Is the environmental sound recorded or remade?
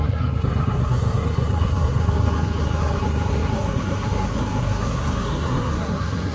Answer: remade